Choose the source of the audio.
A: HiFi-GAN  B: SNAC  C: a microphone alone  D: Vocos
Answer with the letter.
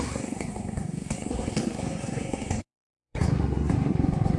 B